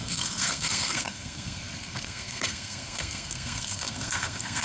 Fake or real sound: fake